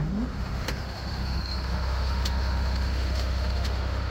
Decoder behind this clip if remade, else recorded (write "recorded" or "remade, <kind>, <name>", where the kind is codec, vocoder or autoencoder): remade, autoencoder, DAC-VAE